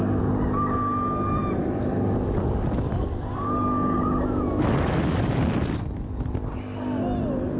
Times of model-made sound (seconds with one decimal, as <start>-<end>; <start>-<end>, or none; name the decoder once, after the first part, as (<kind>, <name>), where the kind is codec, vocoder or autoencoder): none